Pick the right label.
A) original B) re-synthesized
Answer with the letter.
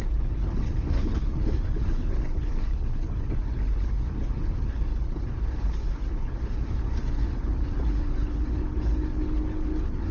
B